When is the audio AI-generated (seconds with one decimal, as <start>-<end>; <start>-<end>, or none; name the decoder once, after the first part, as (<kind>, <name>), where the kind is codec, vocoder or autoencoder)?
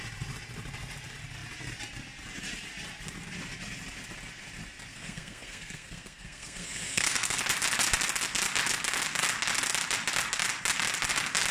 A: 4.9-7.4 (codec, SNAC)